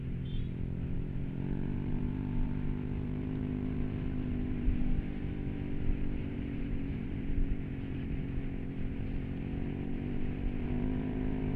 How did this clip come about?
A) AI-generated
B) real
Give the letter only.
A